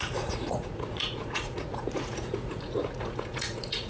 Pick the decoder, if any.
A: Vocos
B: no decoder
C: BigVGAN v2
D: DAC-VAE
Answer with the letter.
A